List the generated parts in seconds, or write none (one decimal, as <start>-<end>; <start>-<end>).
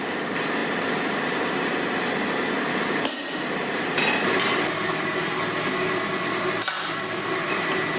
none